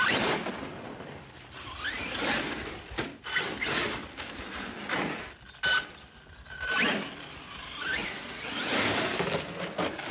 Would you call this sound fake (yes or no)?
no